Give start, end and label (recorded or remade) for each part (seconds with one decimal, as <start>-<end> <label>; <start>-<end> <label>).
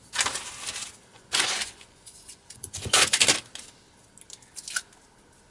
0.0-1.1 recorded; 1.1-3.2 remade; 3.2-5.5 recorded